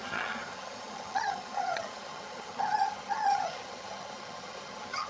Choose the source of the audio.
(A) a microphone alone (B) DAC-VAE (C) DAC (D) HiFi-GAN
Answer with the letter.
D